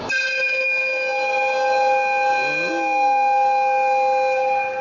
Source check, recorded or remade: recorded